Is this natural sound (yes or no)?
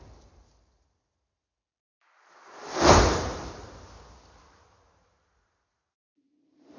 yes